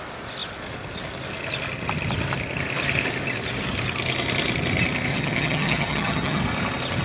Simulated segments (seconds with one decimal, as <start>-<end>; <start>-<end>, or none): 5.1-6.4